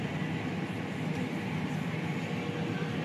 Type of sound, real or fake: real